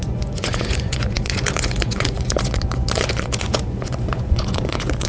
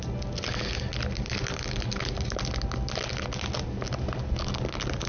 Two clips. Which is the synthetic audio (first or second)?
first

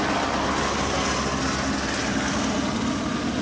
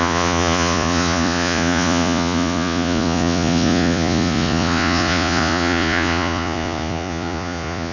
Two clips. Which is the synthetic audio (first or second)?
second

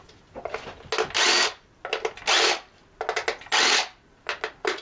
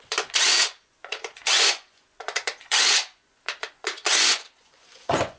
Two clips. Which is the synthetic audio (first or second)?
second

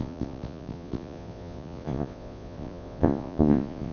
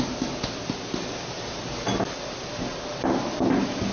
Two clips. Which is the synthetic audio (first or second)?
first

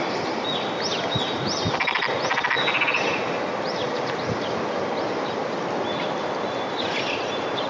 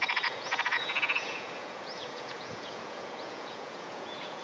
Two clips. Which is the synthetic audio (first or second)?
second